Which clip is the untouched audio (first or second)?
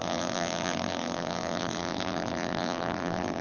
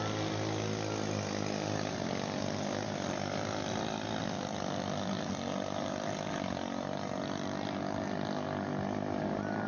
second